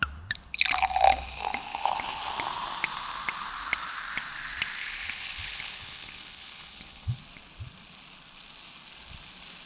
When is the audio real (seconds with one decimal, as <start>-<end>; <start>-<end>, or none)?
0.0-1.7; 2.3-4.8; 7.2-9.7